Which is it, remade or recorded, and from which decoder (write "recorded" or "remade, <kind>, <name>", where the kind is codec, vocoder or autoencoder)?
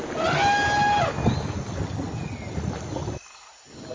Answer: recorded